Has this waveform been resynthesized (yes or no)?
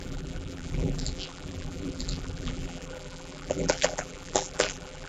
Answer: yes